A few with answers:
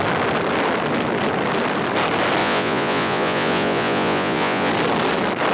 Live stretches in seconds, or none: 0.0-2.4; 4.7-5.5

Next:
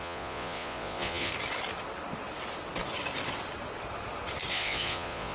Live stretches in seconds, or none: 1.3-4.5

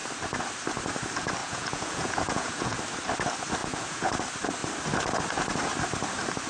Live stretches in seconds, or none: 0.0-1.4; 2.8-3.6; 4.1-6.5

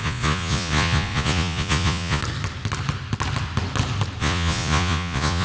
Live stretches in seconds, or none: 2.2-4.2

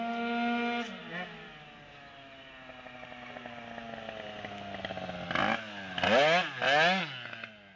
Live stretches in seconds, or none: 0.0-7.8

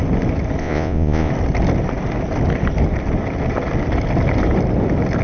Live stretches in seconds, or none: 0.0-0.6; 1.3-5.2